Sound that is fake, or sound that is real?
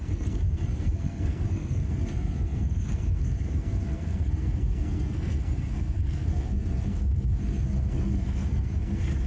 fake